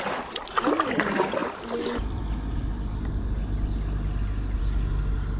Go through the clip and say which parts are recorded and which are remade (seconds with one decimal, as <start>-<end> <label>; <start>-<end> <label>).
0.0-5.4 recorded